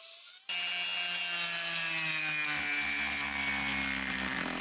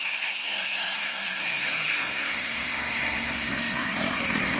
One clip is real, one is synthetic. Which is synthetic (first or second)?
second